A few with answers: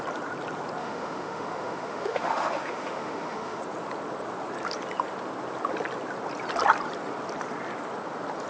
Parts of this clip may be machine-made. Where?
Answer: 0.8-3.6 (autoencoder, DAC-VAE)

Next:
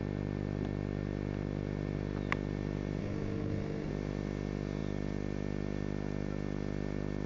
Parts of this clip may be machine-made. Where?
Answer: 3.0-3.9 (codec, SNAC)